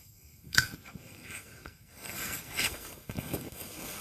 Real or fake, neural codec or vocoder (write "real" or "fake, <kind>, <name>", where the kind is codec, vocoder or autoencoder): fake, codec, SNAC